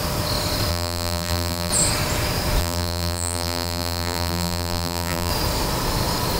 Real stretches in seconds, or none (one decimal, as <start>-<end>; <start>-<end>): 0.0-0.7; 1.7-2.6; 5.3-6.4